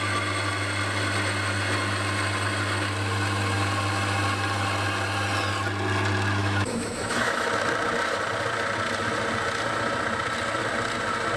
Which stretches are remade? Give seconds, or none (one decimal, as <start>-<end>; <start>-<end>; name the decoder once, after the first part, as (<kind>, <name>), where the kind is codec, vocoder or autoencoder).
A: 6.4-7.5 (autoencoder, DAC-VAE)